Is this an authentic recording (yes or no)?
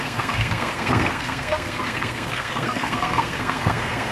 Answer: no